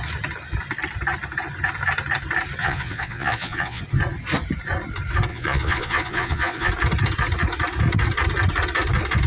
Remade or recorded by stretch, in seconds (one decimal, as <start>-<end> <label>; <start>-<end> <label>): 0.0-2.6 recorded; 2.6-3.8 remade; 3.8-5.3 recorded; 5.3-6.7 remade; 6.7-9.3 recorded